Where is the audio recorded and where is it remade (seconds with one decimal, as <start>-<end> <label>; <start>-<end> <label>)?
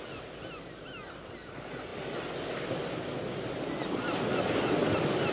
0.0-5.3 recorded